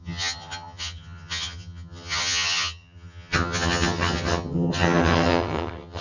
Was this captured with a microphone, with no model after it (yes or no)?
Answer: no